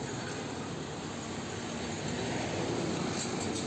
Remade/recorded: recorded